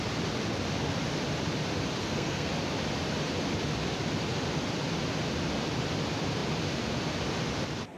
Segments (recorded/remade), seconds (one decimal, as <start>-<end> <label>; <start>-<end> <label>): 0.0-2.0 recorded; 2.0-2.5 remade; 2.5-8.0 recorded